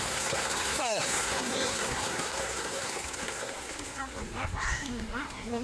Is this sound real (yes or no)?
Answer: no